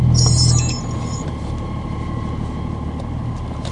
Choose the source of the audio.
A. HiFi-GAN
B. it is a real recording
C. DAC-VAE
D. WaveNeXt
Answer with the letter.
B